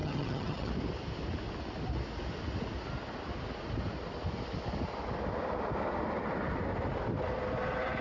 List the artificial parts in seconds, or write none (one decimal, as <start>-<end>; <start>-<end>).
0.0-0.7